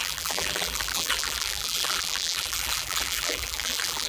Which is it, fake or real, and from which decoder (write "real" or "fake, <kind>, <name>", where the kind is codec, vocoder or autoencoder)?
fake, vocoder, BigVGAN v2